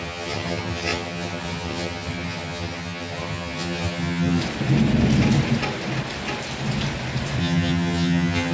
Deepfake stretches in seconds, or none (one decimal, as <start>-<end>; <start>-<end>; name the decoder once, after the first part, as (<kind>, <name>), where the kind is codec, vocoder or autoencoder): 0.0-4.4 (vocoder, HiFi-GAN); 7.4-8.5